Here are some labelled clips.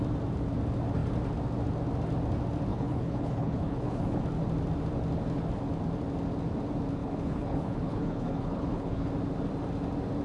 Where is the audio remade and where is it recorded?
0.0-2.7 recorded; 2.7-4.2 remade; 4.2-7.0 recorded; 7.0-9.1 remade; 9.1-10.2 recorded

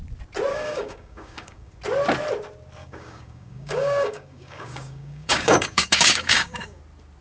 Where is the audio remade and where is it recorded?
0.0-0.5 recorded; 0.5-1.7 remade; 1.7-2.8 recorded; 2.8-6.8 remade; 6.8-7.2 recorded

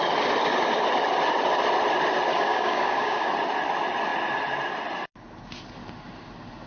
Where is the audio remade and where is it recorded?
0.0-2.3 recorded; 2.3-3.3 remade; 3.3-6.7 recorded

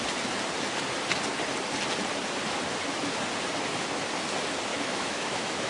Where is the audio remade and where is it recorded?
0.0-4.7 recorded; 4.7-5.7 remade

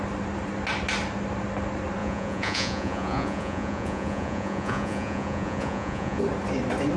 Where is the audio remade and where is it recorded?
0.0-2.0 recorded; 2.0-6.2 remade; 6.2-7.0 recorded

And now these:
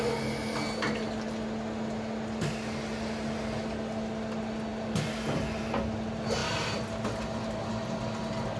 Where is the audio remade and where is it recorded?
0.0-8.6 recorded

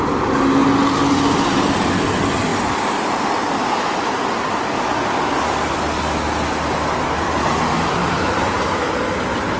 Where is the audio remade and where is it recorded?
0.0-9.6 recorded

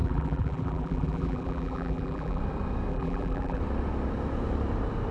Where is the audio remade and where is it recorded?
0.0-2.4 remade; 2.4-2.9 recorded; 2.9-3.6 remade; 3.6-5.1 recorded